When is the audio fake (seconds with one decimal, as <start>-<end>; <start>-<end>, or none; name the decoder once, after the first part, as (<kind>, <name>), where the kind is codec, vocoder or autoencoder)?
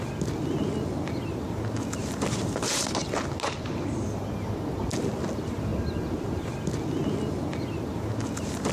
none